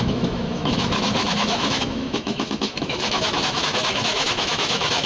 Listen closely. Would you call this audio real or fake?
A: fake